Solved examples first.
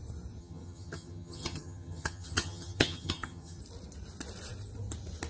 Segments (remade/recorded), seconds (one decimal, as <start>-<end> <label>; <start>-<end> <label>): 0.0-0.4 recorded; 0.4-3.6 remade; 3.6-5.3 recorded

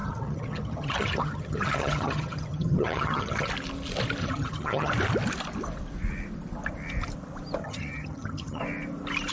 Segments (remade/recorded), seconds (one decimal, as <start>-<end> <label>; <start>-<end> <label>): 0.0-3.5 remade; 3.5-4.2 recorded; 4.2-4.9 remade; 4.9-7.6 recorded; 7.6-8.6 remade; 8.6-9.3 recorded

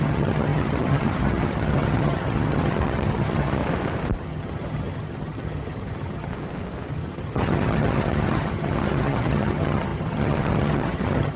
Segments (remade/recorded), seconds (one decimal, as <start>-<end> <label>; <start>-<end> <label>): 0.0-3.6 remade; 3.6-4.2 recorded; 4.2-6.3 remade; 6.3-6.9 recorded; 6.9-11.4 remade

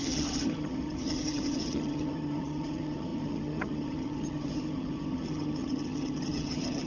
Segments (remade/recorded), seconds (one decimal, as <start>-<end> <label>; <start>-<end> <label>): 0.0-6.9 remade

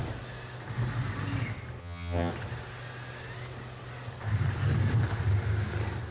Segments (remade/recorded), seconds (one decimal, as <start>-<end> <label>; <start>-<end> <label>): 0.0-1.8 recorded; 1.8-2.3 remade; 2.3-6.1 recorded

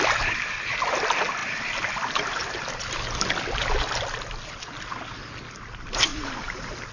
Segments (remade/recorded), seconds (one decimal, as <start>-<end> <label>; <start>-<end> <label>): 0.0-6.9 recorded

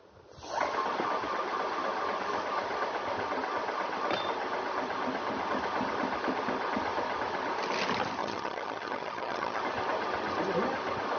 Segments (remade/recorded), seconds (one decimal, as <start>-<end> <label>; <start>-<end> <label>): 0.0-8.2 recorded; 8.2-9.6 remade; 9.6-11.2 recorded

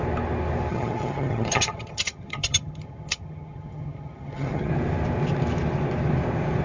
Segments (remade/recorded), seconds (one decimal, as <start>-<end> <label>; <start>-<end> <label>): 0.0-0.7 recorded; 0.7-4.7 remade; 4.7-6.6 recorded